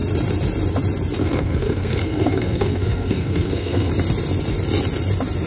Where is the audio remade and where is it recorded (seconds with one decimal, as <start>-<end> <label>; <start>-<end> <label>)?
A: 0.0-1.2 recorded; 1.2-3.9 remade; 3.9-5.5 recorded